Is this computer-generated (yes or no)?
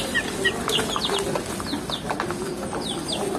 no